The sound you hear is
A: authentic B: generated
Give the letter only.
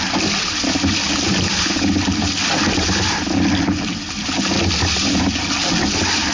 A